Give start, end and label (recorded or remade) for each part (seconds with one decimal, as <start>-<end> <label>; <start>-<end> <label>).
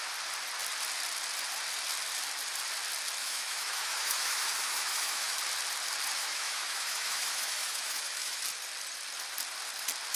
0.0-3.2 recorded; 3.2-5.4 remade; 5.4-6.2 recorded; 6.2-8.4 remade; 8.4-10.2 recorded